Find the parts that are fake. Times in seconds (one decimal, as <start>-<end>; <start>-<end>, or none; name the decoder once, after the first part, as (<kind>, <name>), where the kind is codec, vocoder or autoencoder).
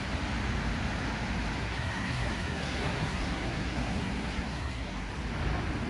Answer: 1.6-5.1 (codec, SNAC)